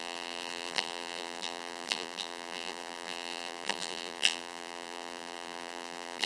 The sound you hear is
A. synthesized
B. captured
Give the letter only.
A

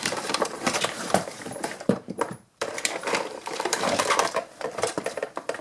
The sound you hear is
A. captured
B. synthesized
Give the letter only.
B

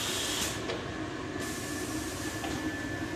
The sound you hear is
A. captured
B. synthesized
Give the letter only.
A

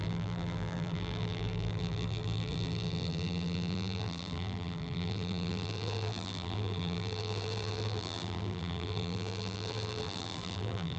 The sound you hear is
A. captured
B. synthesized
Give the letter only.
B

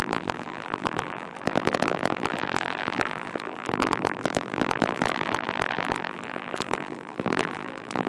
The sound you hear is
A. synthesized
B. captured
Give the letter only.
A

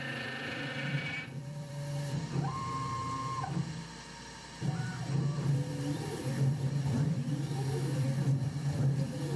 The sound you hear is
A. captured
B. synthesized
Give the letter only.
B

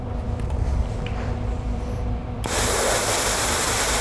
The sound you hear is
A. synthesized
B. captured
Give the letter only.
A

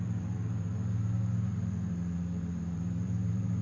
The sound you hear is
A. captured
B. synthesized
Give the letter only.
B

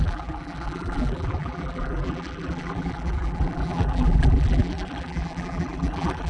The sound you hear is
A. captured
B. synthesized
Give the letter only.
B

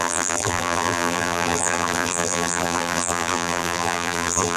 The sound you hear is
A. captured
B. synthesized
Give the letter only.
B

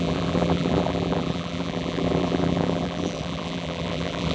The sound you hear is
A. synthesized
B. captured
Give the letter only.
A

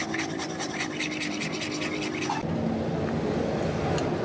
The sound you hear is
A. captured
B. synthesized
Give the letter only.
A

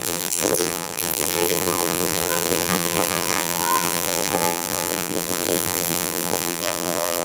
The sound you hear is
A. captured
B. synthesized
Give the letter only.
B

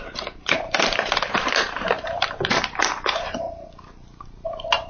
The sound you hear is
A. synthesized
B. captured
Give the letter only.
A